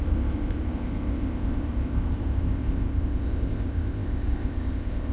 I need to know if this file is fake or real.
fake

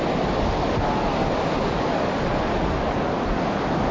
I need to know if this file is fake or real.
real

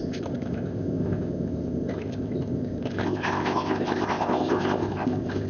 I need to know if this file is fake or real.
fake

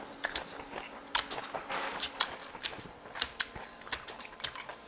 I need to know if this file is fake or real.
real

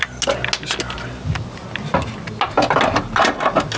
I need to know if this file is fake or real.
real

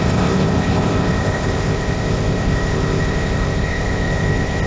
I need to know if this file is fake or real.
fake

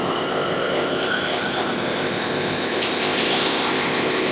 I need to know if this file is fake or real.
fake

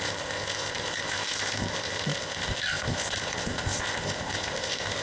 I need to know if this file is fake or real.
fake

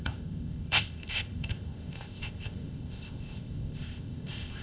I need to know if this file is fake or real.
fake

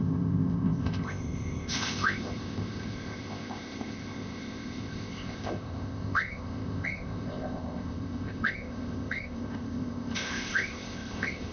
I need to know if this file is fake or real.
fake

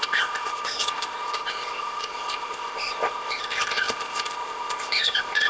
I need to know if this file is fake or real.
fake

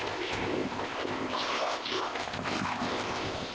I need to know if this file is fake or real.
fake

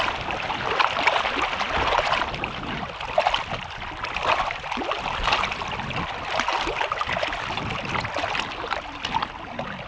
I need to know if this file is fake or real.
real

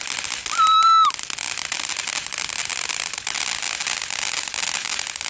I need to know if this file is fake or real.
real